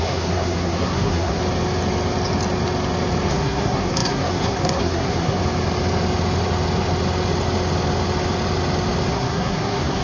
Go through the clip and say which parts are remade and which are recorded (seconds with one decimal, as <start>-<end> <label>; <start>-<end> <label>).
0.0-1.4 remade; 1.4-3.3 recorded; 3.3-5.4 remade; 5.4-9.1 recorded; 9.1-10.0 remade